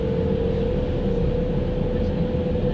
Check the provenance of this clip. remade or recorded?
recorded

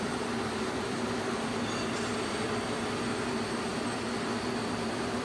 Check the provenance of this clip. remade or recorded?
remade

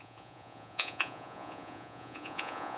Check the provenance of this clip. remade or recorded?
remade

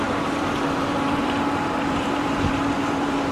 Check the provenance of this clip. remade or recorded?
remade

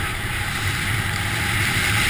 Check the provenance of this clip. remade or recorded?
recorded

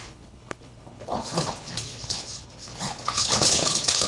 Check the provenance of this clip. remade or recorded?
remade